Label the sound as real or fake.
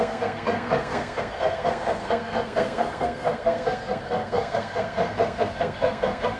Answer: fake